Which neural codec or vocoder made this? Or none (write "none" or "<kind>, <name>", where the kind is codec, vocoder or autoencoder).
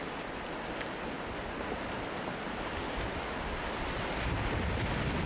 none